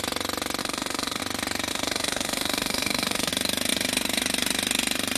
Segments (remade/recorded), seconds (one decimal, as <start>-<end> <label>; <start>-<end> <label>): 0.0-0.6 recorded; 0.6-1.2 remade; 1.2-1.7 recorded; 1.7-3.3 remade; 3.3-5.2 recorded